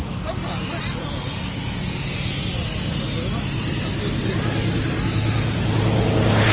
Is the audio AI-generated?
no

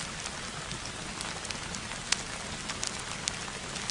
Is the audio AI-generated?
no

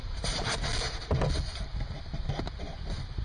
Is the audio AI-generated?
no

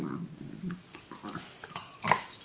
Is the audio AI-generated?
no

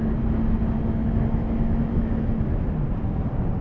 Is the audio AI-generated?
no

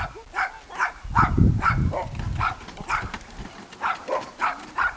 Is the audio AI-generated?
no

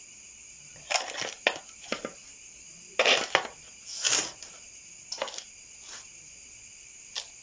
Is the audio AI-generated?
no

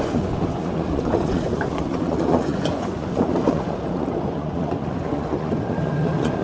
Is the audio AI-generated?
yes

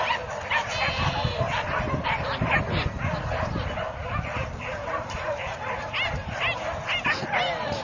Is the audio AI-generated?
no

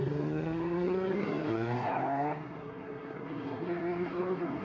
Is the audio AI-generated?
yes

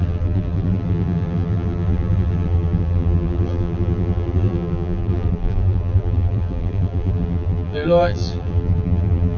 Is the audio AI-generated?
yes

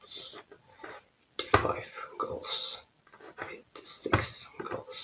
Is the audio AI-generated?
no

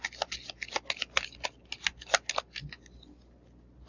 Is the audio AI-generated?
no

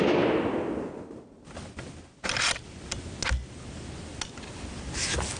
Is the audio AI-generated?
no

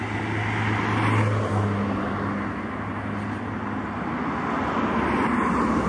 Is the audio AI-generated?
no